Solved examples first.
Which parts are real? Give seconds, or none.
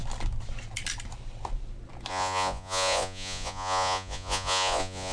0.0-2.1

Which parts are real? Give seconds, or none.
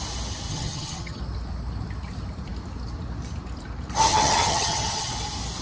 0.0-0.5; 1.2-4.1; 5.1-5.6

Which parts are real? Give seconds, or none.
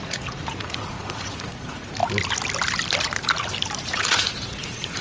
2.0-3.8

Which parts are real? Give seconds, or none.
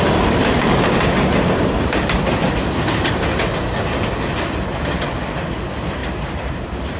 0.0-0.4; 2.8-6.0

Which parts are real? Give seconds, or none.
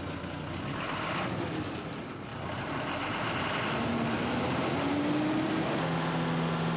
0.0-6.8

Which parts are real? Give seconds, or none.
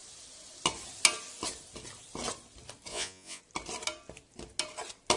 0.0-2.9; 3.4-5.2